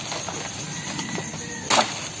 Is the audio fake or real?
real